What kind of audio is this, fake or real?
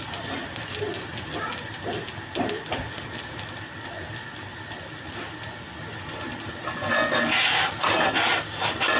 real